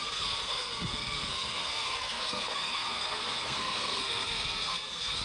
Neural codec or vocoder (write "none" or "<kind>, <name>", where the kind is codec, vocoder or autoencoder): codec, SNAC